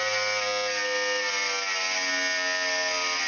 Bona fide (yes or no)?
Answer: yes